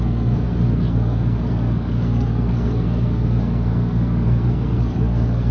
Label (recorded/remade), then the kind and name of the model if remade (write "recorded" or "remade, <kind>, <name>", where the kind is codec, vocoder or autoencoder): remade, codec, SNAC